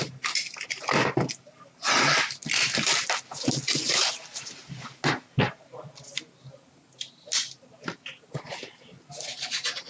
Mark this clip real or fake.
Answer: real